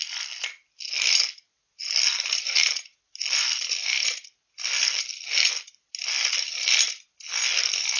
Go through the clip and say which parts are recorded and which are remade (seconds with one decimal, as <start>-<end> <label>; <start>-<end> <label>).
0.0-8.0 recorded